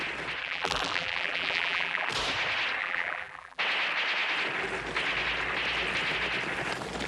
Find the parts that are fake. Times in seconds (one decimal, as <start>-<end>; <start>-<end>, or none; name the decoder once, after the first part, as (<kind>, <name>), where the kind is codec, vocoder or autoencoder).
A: 0.4-2.1 (vocoder, BigVGAN v2); 2.8-3.6